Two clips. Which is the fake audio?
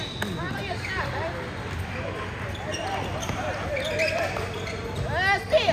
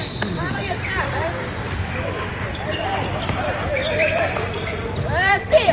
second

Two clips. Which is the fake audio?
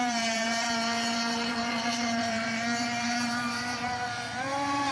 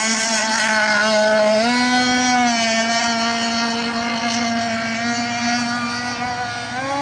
first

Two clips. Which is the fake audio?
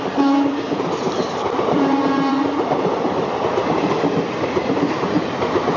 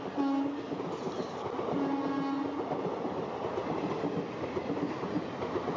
first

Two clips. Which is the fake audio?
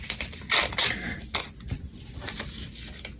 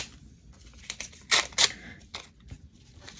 second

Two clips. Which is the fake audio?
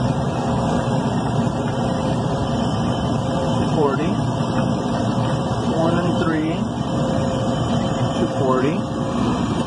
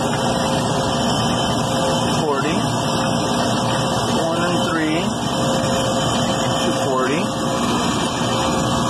first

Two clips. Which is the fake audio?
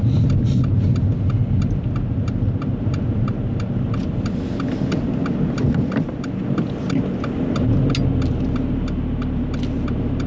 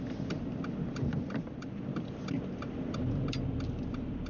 second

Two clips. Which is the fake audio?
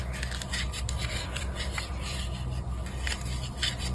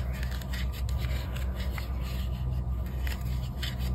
first